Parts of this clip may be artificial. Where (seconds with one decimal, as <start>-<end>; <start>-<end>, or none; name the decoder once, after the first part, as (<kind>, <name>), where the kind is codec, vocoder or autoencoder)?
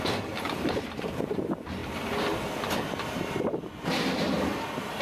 none